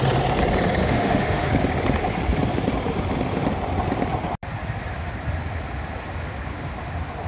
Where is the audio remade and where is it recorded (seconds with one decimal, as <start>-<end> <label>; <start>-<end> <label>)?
0.0-0.8 recorded; 0.8-1.5 remade; 1.5-7.3 recorded